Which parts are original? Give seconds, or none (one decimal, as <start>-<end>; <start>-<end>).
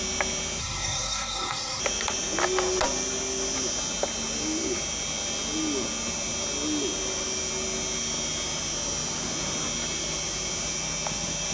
0.0-0.6; 1.8-11.5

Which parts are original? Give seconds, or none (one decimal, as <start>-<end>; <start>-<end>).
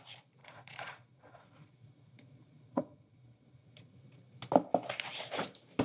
0.0-0.4; 3.9-5.8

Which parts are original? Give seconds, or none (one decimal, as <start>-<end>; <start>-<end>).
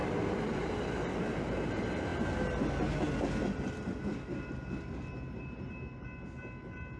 0.7-7.0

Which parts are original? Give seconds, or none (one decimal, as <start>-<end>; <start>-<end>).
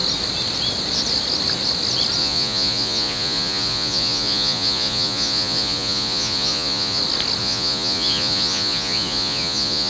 0.0-2.2; 7.0-7.4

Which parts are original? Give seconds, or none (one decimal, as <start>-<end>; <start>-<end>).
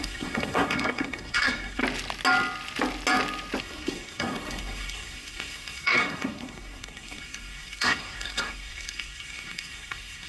1.8-3.6